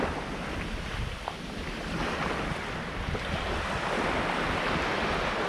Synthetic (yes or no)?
yes